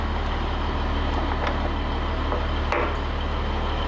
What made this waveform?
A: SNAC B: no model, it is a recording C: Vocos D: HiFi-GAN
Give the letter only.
B